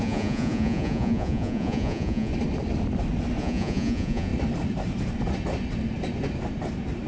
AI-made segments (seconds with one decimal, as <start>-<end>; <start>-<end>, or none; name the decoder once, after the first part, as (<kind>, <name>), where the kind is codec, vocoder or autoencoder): 0.0-2.3 (vocoder, Vocos); 3.4-4.3